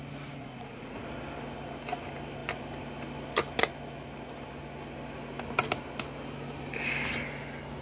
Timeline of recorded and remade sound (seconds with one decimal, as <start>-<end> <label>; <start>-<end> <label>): 0.0-0.4 recorded; 0.4-1.0 remade; 1.0-7.8 recorded